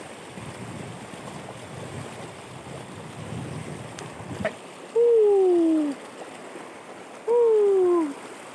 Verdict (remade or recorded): recorded